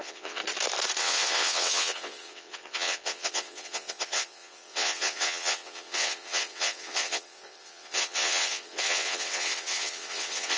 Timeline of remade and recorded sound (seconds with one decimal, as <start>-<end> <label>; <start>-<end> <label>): 0.0-0.4 remade; 0.4-1.0 recorded; 1.0-10.6 remade